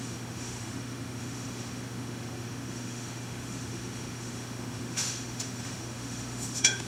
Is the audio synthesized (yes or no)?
yes